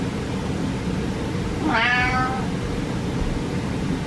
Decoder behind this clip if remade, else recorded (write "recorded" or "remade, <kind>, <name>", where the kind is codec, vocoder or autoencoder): remade, vocoder, BigVGAN v2